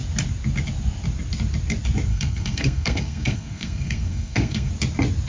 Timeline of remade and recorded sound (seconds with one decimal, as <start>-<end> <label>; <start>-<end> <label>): 0.0-2.1 recorded; 2.1-4.7 remade; 4.7-5.3 recorded